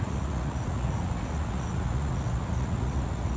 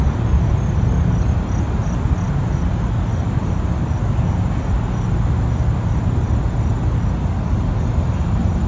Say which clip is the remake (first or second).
first